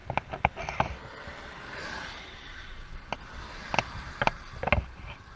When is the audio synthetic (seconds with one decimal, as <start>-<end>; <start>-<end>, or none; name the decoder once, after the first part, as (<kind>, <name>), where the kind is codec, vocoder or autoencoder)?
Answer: none